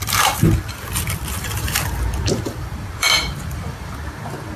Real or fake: fake